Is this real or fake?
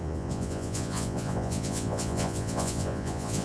fake